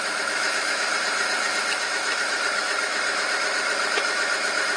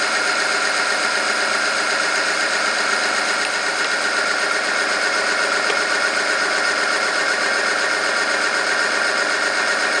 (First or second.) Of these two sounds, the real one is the second